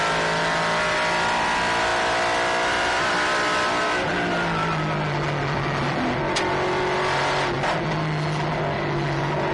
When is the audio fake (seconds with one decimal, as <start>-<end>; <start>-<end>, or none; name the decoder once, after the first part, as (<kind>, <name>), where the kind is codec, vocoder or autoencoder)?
none